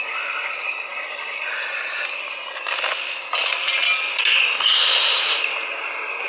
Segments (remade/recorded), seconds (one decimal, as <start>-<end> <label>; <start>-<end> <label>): 0.0-6.3 recorded